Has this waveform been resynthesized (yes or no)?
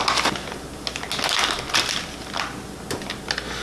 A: no